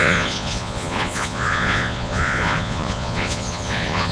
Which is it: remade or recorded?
remade